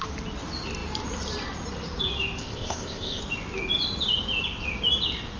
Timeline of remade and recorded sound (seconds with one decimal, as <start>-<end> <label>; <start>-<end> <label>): 0.0-2.4 recorded; 2.4-3.2 remade; 3.2-5.4 recorded